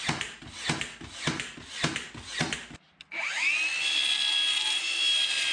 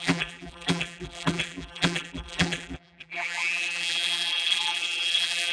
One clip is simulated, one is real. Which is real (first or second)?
first